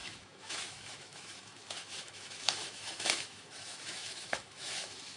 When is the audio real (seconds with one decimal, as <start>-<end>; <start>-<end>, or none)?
none